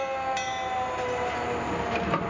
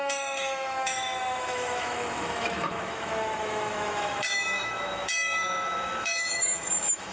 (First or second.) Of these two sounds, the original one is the first